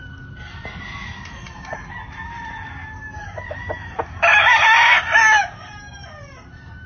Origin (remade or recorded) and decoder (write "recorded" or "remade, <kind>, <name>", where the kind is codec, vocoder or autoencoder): recorded